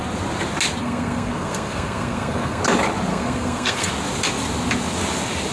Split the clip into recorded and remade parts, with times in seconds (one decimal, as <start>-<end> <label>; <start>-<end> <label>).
0.0-0.8 recorded; 0.8-2.6 remade; 2.6-3.1 recorded; 3.1-3.9 remade; 3.9-5.5 recorded